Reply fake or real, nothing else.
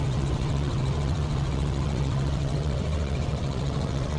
fake